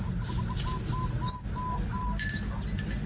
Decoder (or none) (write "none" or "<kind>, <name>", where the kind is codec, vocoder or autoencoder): none